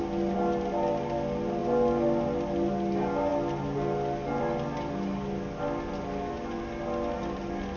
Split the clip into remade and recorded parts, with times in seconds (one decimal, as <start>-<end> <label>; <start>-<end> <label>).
0.0-7.8 recorded